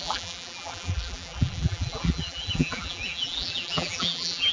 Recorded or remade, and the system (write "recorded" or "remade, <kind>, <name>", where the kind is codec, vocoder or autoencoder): remade, vocoder, BigVGAN v2